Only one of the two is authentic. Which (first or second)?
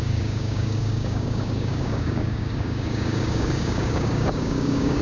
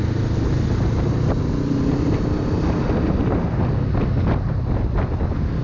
second